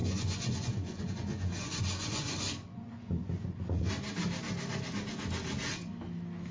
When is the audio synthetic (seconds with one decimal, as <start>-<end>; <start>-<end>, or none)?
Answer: 0.0-3.9